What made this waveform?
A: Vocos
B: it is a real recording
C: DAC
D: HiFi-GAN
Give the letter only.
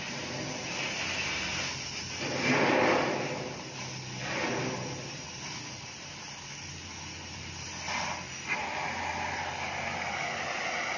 B